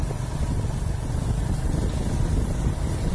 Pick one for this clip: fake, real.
real